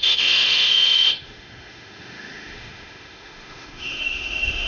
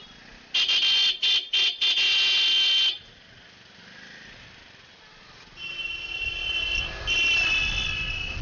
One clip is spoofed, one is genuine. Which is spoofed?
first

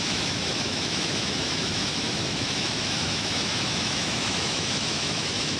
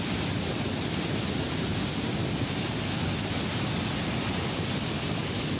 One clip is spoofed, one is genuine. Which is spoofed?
first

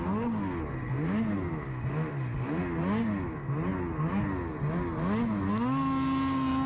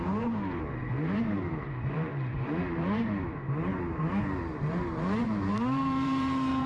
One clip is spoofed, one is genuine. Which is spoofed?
second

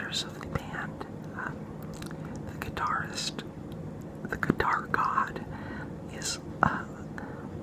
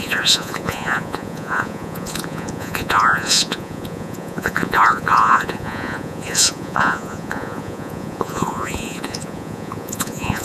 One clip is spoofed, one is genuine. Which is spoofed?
second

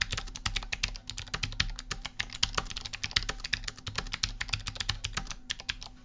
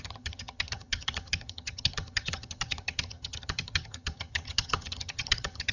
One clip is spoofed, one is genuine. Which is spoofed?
second